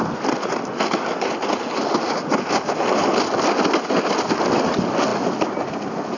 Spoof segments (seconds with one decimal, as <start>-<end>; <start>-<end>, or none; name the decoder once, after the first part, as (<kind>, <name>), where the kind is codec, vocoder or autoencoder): none